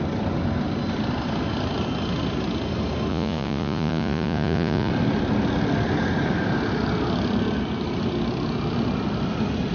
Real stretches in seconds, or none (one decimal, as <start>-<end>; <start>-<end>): 0.0-3.1; 4.9-9.7